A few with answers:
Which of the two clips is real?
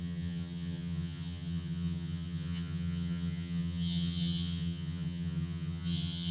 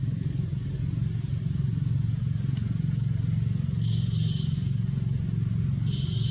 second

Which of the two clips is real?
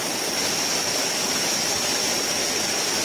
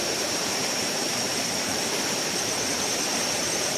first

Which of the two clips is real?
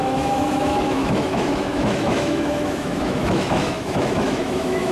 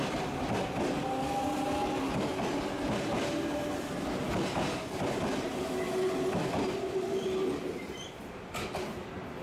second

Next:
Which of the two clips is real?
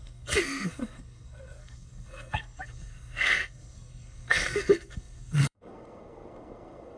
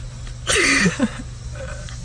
second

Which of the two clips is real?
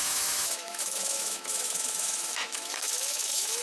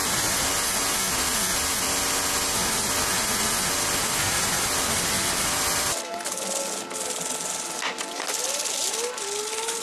second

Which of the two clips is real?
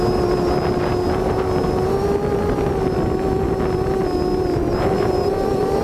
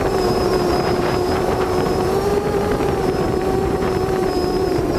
first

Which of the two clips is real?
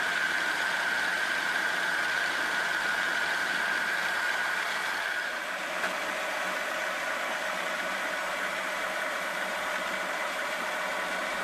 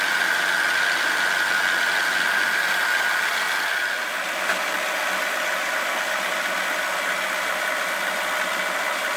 second